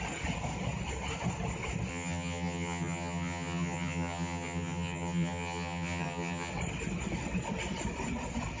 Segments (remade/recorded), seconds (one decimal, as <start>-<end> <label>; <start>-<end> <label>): 0.0-1.9 recorded; 1.9-6.5 remade; 6.5-8.6 recorded